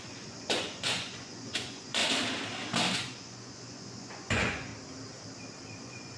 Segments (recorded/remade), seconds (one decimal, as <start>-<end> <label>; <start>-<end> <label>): 0.0-2.0 remade; 2.0-2.9 recorded; 2.9-4.7 remade; 4.7-5.8 recorded; 5.8-6.2 remade